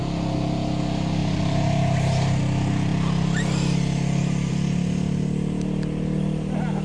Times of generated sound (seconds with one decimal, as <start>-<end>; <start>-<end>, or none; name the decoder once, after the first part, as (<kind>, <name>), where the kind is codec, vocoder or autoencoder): 1.2-2.4 (vocoder, BigVGAN v2)